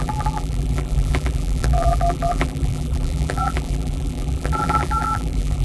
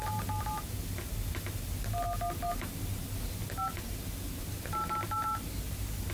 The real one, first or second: second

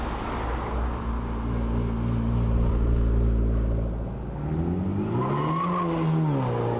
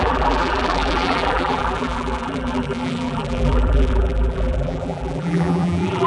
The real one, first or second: first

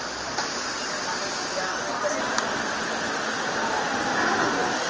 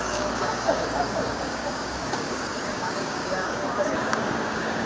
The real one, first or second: first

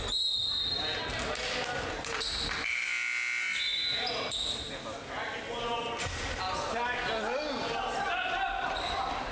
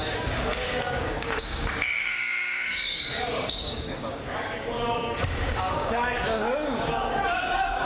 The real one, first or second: first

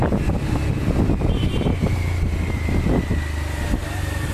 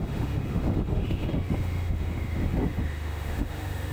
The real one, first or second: first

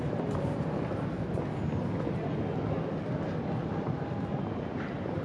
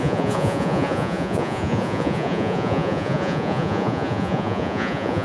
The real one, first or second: first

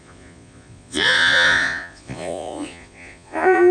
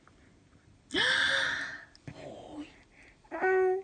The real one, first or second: second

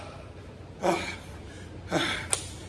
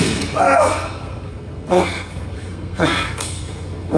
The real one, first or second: first